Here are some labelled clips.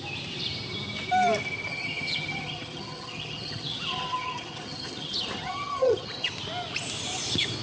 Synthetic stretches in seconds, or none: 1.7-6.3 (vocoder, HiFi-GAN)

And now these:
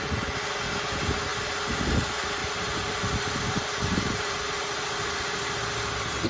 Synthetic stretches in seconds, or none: none

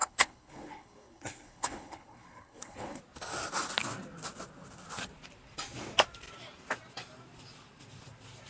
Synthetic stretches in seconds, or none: 0.0-3.0 (codec, HILCodec)

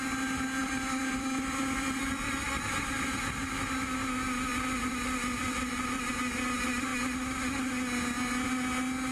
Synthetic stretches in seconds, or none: 0.6-2.7 (vocoder, BigVGAN v2); 4.5-6.1

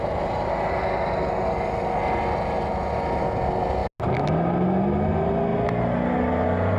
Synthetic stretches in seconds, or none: none